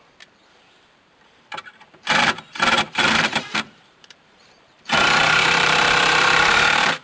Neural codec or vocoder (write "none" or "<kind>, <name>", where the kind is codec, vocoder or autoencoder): vocoder, BigVGAN v2